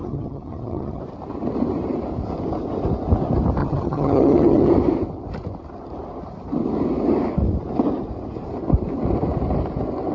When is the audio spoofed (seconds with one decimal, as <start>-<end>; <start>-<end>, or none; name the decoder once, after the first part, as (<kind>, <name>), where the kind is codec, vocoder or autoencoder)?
0.0-1.0 (vocoder, HiFi-GAN); 3.6-4.7